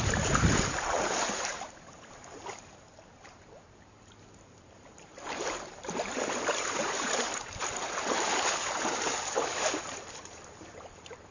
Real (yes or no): no